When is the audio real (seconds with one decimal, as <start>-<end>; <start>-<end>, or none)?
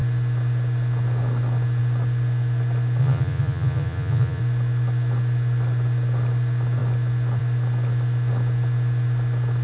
0.0-3.0; 4.4-9.6